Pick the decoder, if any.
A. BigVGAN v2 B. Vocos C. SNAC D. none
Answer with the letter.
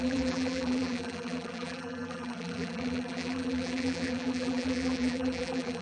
A